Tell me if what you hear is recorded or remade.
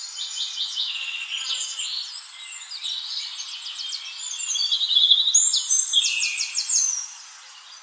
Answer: recorded